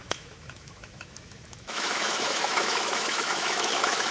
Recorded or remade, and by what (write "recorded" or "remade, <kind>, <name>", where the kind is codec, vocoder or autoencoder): remade, autoencoder, DAC-VAE